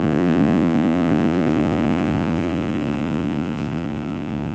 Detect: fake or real fake